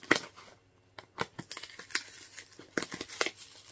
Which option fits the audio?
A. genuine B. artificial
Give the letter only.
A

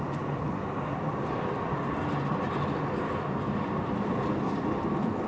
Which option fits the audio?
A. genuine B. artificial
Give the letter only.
A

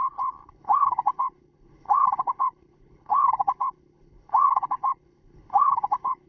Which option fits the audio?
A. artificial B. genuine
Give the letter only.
A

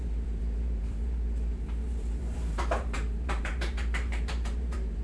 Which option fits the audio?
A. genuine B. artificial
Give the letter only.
B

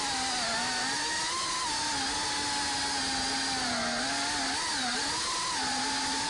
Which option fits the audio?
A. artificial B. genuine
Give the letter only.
B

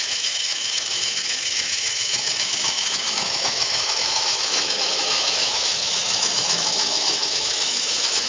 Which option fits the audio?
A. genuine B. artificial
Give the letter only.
B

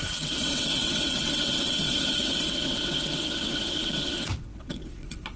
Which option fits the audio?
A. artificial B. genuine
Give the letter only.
A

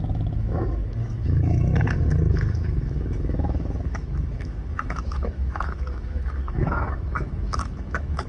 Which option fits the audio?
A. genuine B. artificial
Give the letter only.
B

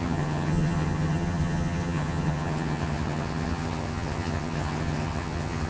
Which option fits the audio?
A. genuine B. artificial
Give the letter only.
B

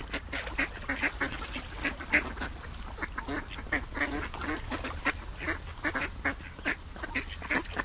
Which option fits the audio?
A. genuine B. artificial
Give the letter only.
A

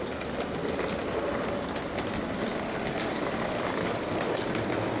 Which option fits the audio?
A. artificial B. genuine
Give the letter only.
B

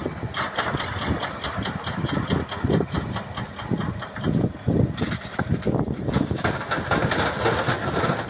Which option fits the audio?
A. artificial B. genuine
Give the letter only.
B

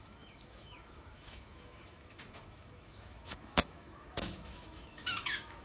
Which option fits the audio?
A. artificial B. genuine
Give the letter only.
A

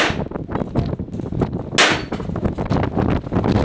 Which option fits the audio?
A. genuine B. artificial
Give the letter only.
A